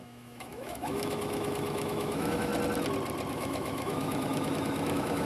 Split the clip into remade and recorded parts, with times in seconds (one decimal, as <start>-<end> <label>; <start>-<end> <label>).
0.0-2.5 remade; 2.5-3.3 recorded; 3.3-5.2 remade